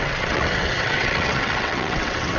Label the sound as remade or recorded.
remade